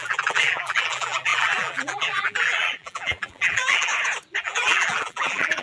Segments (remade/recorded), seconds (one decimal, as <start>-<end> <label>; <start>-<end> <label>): 0.0-3.9 remade; 3.9-4.4 recorded; 4.4-5.6 remade